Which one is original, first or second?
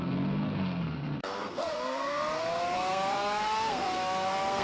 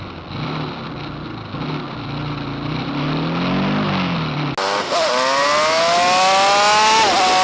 second